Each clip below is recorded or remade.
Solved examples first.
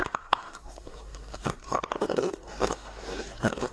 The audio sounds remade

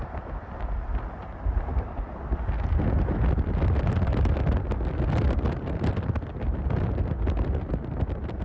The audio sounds recorded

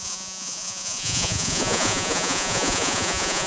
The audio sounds remade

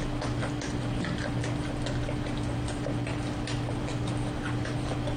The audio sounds recorded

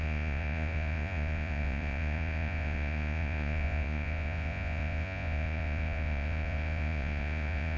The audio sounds remade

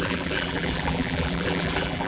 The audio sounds remade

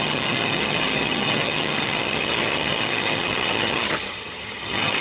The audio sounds remade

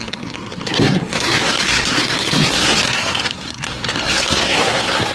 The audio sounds remade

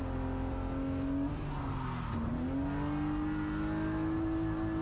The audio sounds recorded